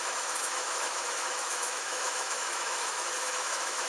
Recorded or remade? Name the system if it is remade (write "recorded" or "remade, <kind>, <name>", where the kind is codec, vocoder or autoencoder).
remade, autoencoder, DAC-VAE